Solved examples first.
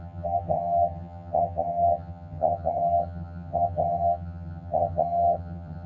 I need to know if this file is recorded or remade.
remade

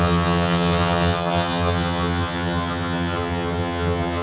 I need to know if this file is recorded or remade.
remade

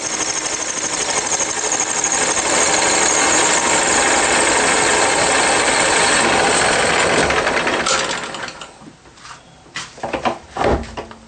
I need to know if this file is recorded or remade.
recorded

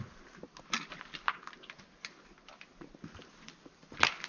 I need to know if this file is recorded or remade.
recorded